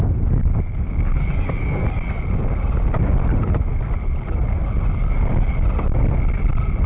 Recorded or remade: recorded